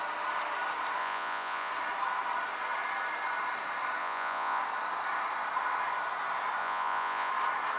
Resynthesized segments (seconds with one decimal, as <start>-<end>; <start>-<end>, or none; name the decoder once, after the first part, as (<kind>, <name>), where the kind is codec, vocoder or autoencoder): 1.0-1.7 (vocoder, Vocos); 4.0-4.6; 6.6-7.3